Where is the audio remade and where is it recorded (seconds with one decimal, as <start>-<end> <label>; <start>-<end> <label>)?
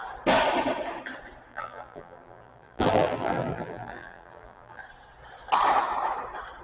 0.0-1.5 recorded; 1.5-4.8 remade; 4.8-6.6 recorded